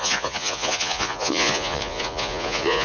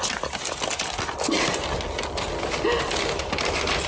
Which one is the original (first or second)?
second